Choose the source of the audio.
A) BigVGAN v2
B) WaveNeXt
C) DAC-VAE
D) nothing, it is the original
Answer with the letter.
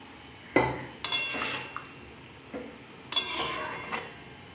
D